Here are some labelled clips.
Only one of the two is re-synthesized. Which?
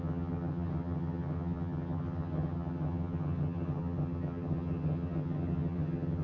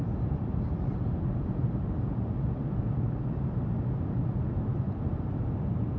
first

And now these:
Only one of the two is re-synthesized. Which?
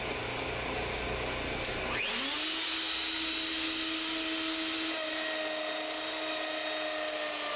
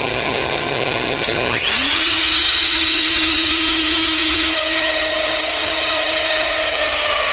second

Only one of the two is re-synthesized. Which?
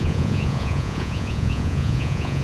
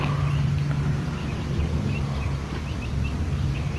first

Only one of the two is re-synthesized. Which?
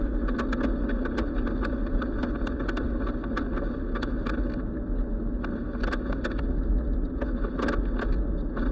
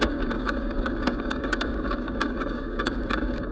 second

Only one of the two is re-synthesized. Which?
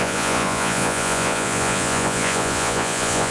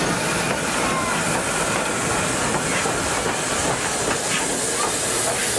first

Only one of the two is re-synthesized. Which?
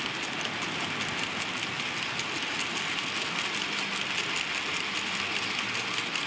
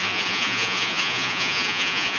second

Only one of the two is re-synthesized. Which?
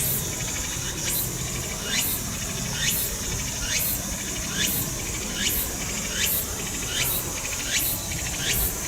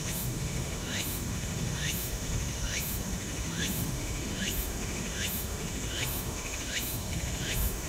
second